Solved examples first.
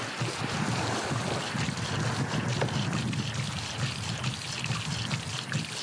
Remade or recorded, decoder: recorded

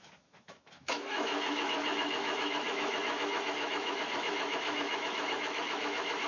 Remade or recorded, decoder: remade, autoencoder, DAC-VAE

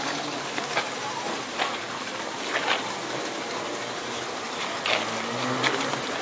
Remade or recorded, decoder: recorded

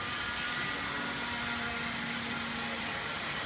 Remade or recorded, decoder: recorded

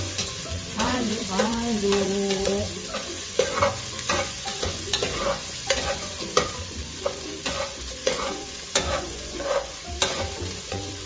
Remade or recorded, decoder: remade, vocoder, Vocos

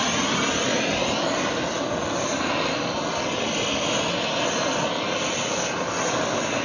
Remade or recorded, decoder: recorded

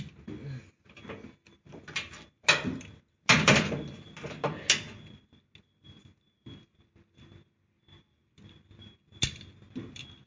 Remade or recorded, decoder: recorded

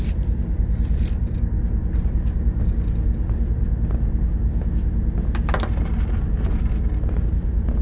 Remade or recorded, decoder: recorded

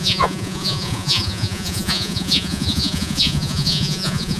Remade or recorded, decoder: remade, vocoder, Vocos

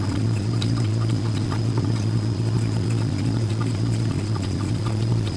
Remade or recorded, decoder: remade, vocoder, Vocos